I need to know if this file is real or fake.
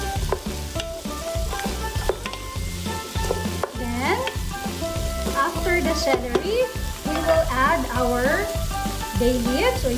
real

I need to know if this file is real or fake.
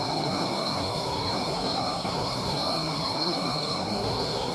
fake